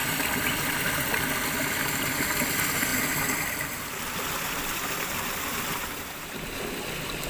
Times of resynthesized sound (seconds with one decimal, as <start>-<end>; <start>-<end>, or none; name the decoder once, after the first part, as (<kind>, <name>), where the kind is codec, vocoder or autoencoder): none